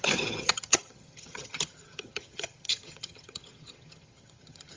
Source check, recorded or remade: remade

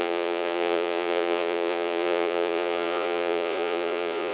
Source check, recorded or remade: remade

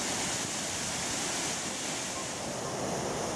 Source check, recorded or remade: recorded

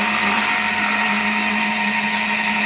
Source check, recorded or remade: recorded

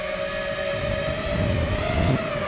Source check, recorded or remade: recorded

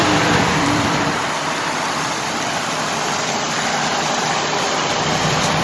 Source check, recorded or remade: remade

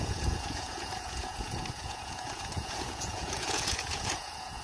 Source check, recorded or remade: remade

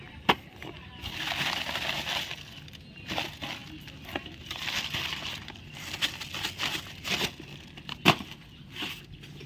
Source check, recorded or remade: recorded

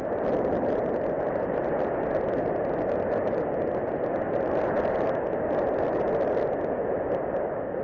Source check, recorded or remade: recorded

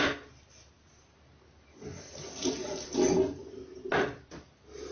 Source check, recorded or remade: recorded